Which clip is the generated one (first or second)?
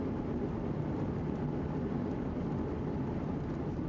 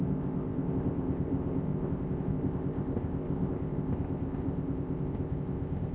second